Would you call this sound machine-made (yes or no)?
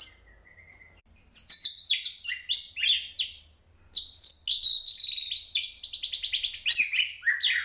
no